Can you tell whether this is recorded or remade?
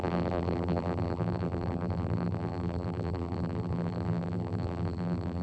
remade